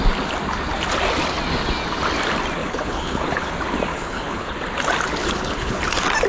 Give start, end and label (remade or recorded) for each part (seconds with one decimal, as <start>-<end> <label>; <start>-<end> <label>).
0.0-2.6 recorded; 2.6-3.5 remade; 3.5-3.9 recorded; 3.9-4.5 remade; 4.5-5.2 recorded; 5.2-5.8 remade; 5.8-6.3 recorded